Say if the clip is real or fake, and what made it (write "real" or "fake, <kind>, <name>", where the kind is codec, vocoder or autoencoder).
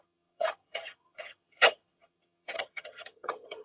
fake, vocoder, HiFi-GAN